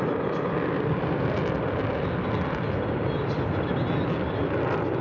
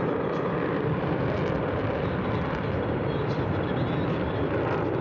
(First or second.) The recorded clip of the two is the first